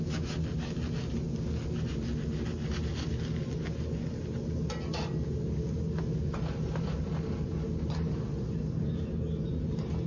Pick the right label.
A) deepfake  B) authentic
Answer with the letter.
B